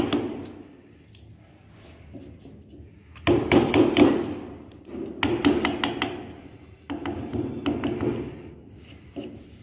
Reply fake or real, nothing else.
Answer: real